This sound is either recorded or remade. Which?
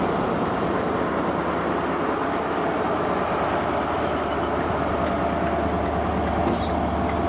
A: recorded